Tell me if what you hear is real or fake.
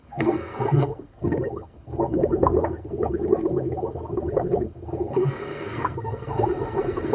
fake